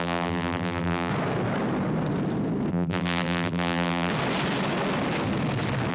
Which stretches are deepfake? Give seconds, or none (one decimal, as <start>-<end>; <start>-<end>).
0.0-1.1; 2.7-4.1